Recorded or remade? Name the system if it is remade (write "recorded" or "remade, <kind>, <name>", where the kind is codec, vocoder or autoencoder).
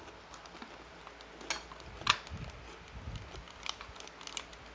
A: recorded